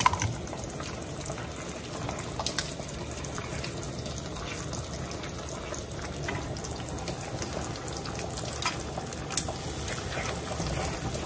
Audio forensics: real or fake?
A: real